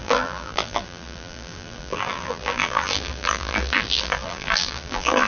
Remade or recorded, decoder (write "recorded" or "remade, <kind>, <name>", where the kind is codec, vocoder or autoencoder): remade, vocoder, BigVGAN v2